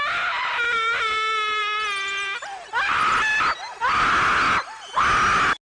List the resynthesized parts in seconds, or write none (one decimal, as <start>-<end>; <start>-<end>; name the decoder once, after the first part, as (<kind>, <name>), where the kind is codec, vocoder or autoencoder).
none